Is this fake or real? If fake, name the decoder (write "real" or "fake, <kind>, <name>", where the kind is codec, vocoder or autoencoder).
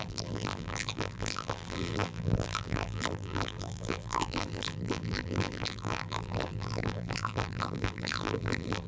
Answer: fake, vocoder, BigVGAN v2